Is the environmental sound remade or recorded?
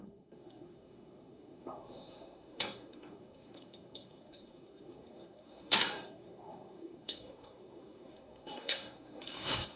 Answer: remade